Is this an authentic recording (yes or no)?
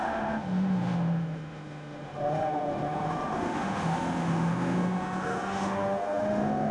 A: no